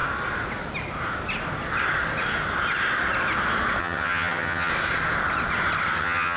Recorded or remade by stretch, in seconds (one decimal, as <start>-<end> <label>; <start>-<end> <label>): 0.0-3.8 recorded; 3.8-4.7 remade; 4.7-6.0 recorded; 6.0-6.4 remade